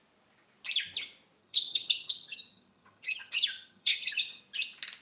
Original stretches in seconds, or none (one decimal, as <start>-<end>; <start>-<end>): 0.0-1.4; 4.4-5.0